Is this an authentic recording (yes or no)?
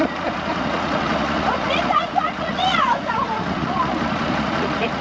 no